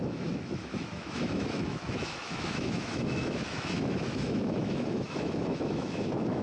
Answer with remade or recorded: remade